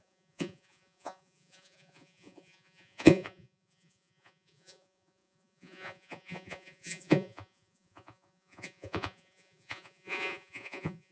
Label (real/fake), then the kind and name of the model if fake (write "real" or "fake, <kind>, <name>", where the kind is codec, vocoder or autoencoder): fake, vocoder, Vocos